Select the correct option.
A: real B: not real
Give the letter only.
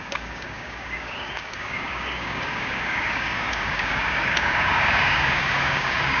B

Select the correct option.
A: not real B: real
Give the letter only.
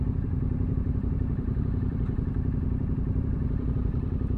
A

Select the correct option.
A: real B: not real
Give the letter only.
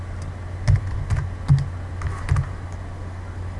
A